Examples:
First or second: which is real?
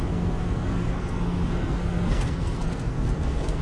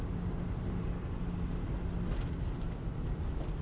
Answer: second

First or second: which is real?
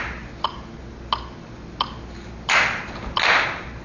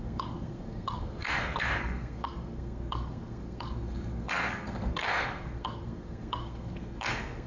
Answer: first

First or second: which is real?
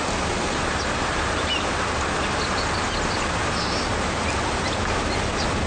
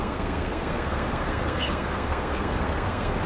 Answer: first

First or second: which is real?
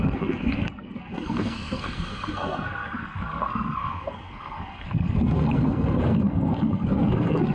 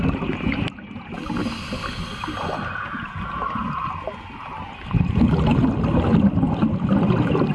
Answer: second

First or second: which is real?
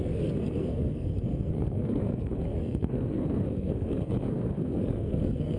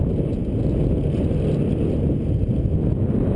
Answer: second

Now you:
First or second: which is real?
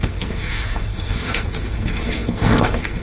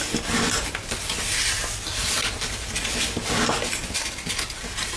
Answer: second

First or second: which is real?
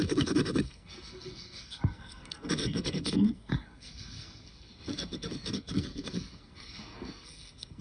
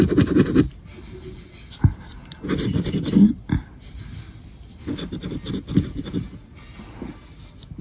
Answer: second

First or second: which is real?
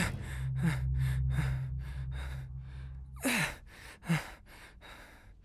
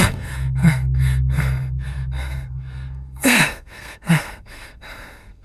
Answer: first